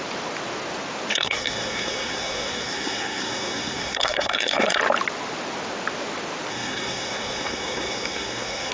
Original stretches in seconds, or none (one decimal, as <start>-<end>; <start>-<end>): 0.0-1.1; 4.8-6.5